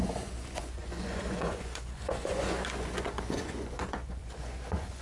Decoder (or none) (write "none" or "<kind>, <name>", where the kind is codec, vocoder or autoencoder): vocoder, Vocos